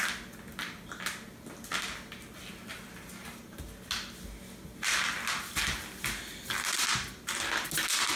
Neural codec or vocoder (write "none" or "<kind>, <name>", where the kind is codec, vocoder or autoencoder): none